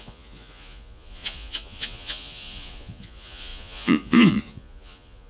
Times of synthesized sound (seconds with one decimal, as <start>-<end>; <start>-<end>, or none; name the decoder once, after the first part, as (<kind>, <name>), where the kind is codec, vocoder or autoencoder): 0.0-5.3 (vocoder, Vocos)